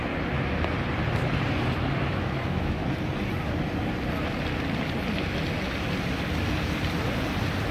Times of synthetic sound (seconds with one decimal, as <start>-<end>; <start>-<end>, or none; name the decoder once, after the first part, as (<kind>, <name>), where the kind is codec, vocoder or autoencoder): 2.0-2.8 (autoencoder, DAC-VAE)